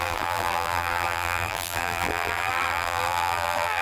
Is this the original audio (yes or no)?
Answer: no